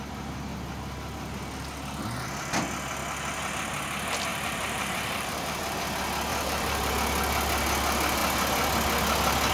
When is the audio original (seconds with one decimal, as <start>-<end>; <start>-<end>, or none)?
0.0-4.3; 5.8-6.3; 6.9-9.5